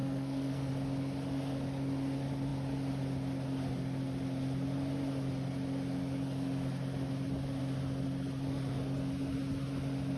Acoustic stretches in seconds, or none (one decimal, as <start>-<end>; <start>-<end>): 0.7-10.2